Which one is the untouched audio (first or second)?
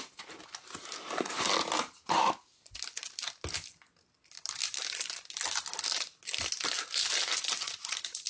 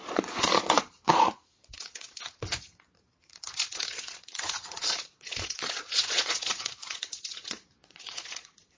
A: first